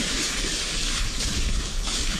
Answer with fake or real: fake